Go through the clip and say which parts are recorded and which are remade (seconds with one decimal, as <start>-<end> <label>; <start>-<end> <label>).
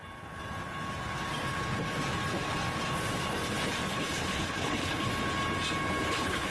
0.0-3.9 recorded; 3.9-5.1 remade; 5.1-6.1 recorded; 6.1-6.5 remade